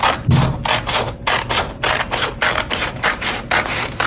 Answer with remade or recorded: recorded